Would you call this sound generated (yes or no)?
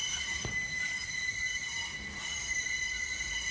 no